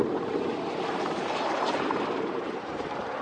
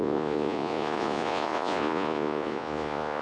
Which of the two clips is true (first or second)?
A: first